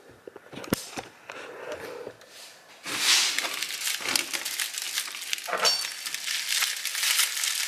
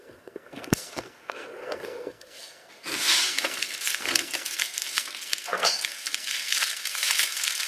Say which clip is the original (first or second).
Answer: first